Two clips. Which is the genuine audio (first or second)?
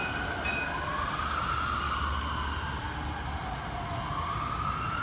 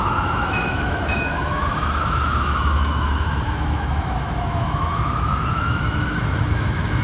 first